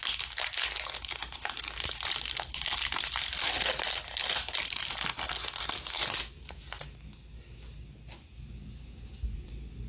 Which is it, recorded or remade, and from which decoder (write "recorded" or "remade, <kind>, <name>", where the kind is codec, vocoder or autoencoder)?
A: recorded